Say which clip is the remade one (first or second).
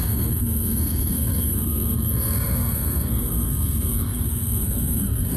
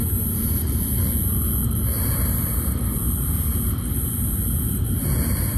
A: first